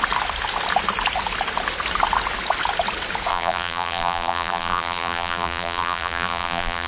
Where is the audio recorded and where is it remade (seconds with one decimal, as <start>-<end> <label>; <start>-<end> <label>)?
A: 0.0-3.3 recorded; 3.3-6.9 remade